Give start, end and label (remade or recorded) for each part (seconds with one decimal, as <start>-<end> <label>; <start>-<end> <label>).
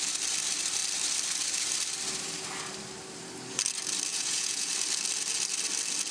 0.0-4.1 recorded; 4.1-4.7 remade; 4.7-6.1 recorded